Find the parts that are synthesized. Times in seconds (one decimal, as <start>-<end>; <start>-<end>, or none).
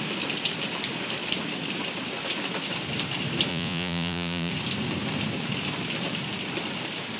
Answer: 3.5-4.5